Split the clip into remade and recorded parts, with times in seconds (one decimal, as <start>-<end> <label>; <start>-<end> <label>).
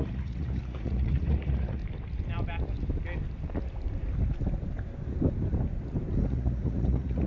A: 0.0-1.8 remade; 1.8-6.2 recorded; 6.2-7.3 remade